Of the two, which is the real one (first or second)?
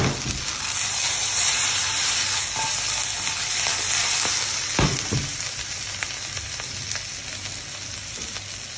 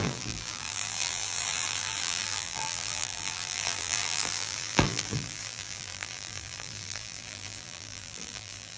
first